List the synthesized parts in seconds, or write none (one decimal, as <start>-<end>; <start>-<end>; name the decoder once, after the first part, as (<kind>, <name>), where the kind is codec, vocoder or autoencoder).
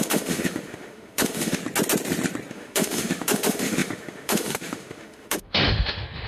0.0-1.6 (autoencoder, DAC-VAE); 2.5-6.3